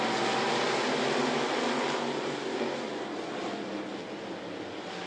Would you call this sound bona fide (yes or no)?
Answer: yes